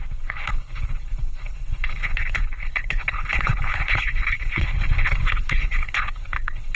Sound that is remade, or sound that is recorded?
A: remade